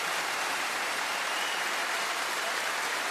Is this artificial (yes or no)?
yes